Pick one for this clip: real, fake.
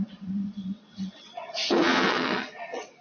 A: fake